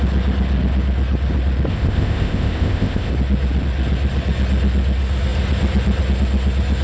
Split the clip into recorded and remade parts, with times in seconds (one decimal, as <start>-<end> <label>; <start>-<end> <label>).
0.0-1.7 recorded; 1.7-3.1 remade; 3.1-6.8 recorded